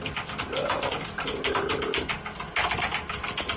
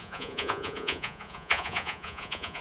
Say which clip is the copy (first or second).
second